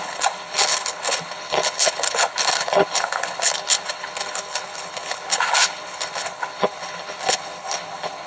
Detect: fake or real fake